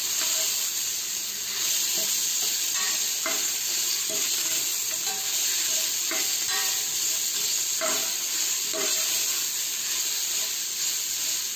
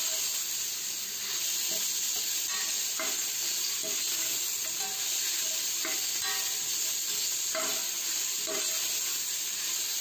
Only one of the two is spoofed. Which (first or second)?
first